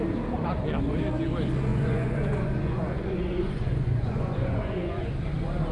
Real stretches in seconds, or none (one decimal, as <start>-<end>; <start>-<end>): 0.0-1.7; 5.1-5.7